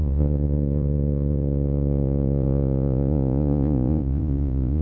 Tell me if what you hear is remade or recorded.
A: remade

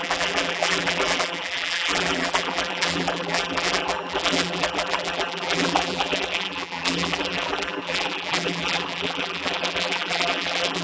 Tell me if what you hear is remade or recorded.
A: remade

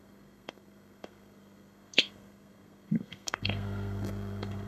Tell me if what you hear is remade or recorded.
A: remade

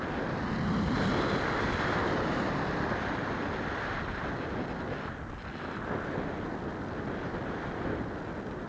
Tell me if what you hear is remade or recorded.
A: recorded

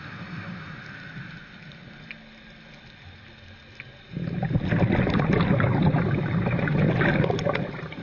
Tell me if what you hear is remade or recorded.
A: recorded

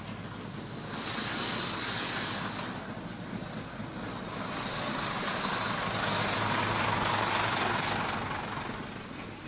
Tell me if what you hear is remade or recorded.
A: recorded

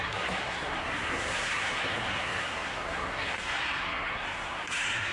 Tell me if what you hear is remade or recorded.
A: remade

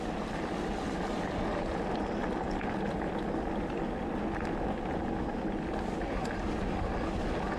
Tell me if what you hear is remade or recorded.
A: recorded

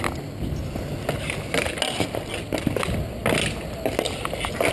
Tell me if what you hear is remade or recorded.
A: recorded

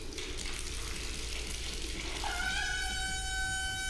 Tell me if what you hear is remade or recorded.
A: recorded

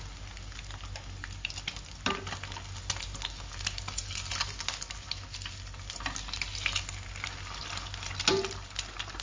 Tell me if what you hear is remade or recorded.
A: recorded